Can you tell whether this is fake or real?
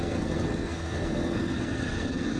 fake